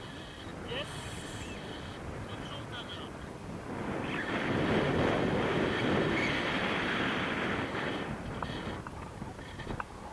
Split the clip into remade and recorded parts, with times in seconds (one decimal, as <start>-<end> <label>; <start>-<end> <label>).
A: 0.0-10.1 recorded